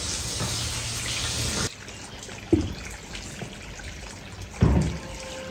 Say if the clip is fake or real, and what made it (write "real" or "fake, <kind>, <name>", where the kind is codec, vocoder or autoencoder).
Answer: real